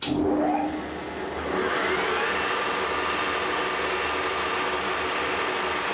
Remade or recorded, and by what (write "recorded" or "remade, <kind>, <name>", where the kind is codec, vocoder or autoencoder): recorded